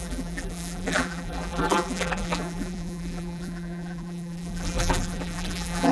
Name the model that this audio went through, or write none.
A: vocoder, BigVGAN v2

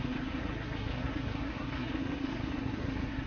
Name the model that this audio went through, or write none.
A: codec, SNAC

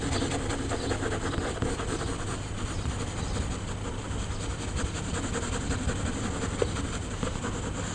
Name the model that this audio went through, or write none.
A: none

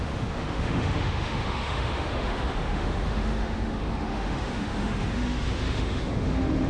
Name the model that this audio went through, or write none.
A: autoencoder, DAC-VAE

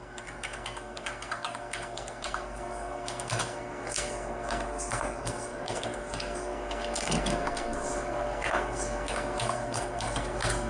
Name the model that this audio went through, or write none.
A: codec, SNAC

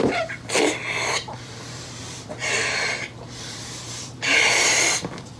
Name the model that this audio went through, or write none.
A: vocoder, BigVGAN v2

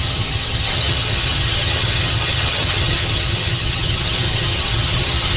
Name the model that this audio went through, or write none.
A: vocoder, HiFi-GAN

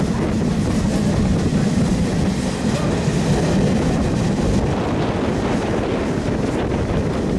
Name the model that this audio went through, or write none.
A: none